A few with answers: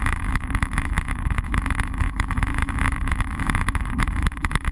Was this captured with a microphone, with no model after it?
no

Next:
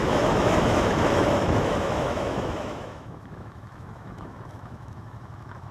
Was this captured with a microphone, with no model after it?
no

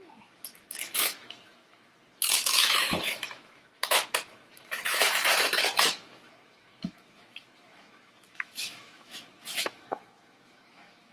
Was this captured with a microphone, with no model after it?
no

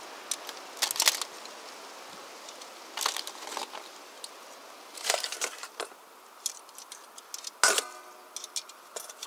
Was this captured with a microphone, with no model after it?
yes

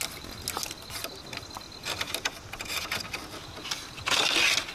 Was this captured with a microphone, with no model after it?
yes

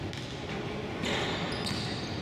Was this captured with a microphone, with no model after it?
yes